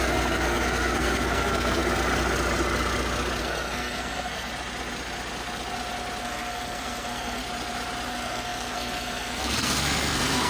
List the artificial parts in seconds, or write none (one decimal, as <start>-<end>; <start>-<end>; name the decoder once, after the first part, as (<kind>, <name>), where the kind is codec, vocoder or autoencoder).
0.0-1.8 (codec, SNAC); 3.4-4.5; 6.2-7.4; 8.1-10.5